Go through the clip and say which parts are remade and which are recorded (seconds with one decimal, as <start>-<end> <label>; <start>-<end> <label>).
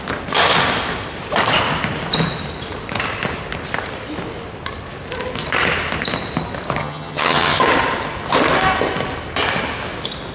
0.0-6.8 recorded; 6.8-7.6 remade; 7.6-10.3 recorded